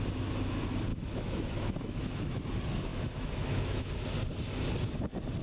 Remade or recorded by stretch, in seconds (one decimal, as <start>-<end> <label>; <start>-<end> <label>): 0.0-0.9 recorded; 0.9-2.3 remade; 2.3-2.9 recorded; 2.9-3.9 remade; 3.9-5.4 recorded